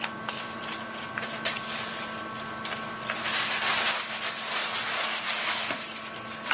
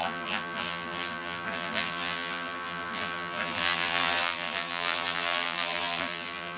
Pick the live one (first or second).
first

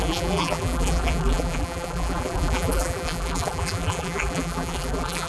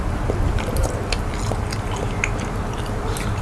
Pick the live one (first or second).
second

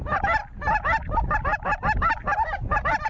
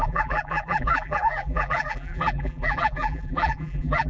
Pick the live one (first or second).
first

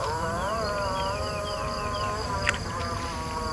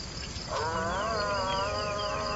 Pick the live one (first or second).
second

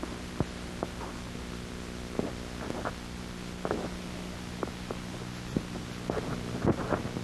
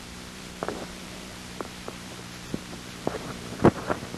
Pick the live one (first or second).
first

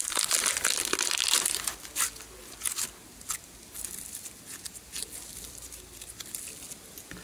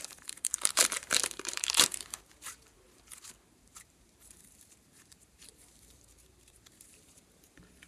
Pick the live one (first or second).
first